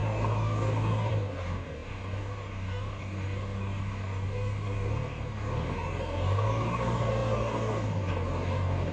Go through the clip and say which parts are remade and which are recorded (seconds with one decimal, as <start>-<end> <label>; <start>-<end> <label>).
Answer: 0.0-8.9 remade

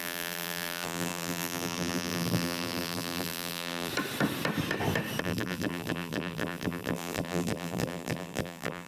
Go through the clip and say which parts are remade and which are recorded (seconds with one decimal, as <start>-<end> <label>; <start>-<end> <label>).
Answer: 0.0-3.9 remade; 3.9-5.2 recorded; 5.2-8.9 remade

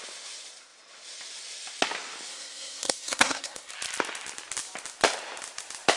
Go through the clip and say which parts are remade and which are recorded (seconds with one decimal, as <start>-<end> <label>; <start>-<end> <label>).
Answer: 0.0-2.3 recorded; 2.3-3.7 remade; 3.7-6.0 recorded

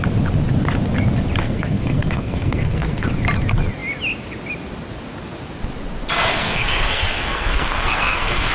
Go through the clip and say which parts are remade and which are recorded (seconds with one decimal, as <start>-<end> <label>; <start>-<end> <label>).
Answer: 0.0-1.4 recorded; 1.4-3.1 remade; 3.1-6.3 recorded; 6.3-8.5 remade

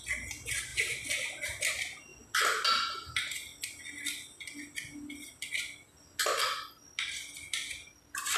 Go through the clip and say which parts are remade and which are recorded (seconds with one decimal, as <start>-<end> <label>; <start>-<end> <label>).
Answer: 0.0-8.4 recorded